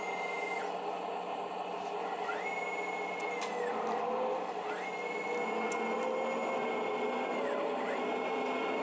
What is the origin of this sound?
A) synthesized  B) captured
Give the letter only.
B